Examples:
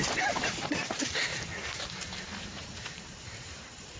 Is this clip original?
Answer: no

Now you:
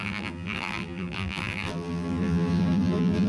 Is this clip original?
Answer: no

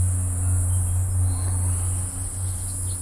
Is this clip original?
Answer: yes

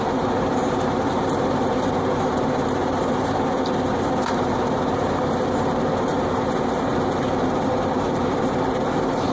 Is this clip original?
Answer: no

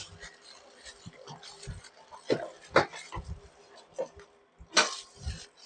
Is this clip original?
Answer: yes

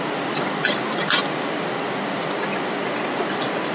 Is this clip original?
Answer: no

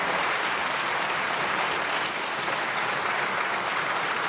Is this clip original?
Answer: no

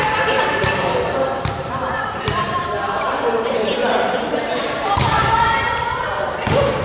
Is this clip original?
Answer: no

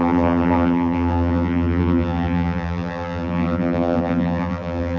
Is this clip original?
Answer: no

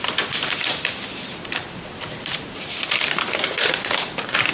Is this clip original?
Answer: no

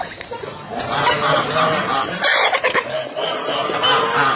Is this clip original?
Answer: no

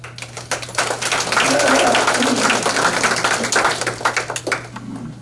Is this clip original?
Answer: yes